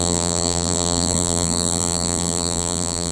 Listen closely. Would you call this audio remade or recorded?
remade